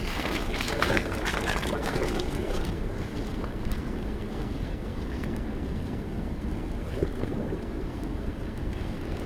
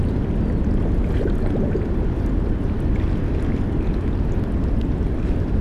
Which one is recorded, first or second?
second